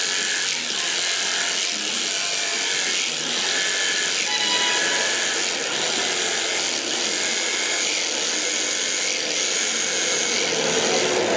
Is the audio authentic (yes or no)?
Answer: yes